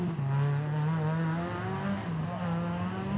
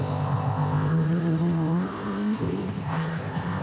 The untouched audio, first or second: first